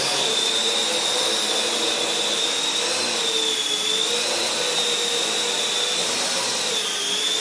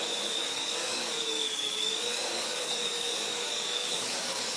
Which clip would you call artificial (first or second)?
second